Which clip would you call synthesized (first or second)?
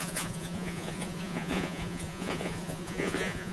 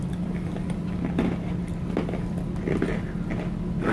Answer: first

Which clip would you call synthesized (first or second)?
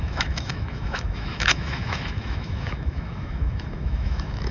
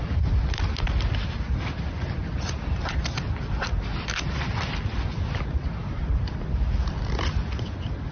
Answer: first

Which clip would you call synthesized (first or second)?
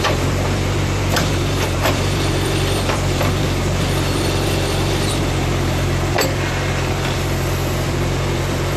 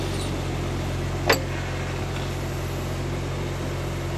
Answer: first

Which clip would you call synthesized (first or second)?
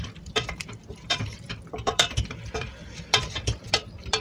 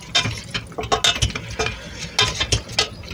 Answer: first